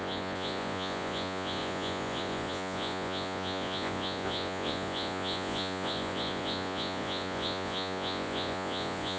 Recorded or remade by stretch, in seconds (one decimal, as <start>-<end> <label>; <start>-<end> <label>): 0.0-9.2 remade